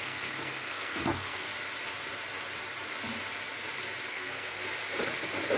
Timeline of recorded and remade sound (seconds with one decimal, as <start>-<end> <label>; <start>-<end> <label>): 0.0-1.5 remade; 1.5-4.1 recorded; 4.1-4.6 remade; 4.6-5.6 recorded